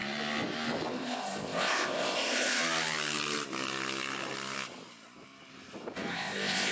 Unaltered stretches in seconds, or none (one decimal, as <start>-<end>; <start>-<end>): 0.0-0.9; 2.6-6.1